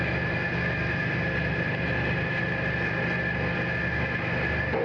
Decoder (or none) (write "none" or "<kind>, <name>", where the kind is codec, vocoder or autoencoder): none